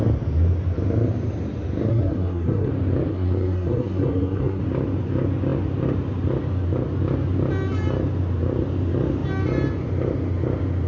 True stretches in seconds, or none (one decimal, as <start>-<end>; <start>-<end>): 0.0-1.9; 2.7-3.1; 4.6-10.9